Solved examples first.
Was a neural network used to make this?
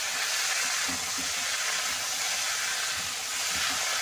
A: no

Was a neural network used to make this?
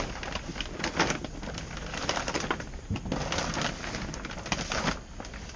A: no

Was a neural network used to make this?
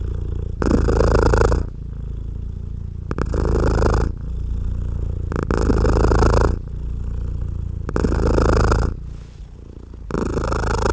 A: no